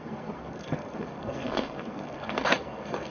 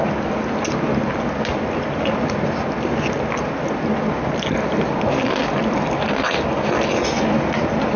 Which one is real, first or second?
second